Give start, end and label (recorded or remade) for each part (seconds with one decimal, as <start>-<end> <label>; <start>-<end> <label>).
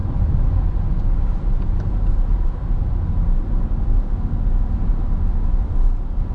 0.0-6.3 recorded